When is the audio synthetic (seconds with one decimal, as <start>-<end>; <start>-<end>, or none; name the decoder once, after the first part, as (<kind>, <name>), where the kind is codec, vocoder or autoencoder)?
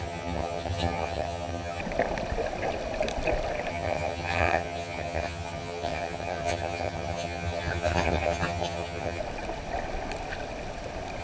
0.0-1.8 (vocoder, HiFi-GAN); 3.7-9.2